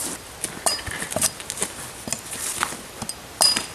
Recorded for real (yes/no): yes